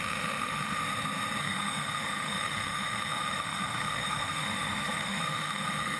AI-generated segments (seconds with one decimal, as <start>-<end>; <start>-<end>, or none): 0.0-0.8; 1.4-6.0